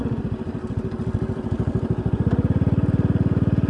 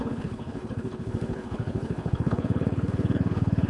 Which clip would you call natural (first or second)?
first